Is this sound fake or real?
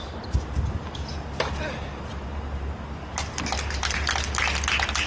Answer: real